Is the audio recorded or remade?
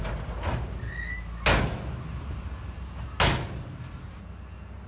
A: recorded